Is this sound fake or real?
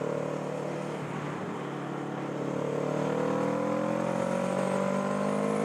real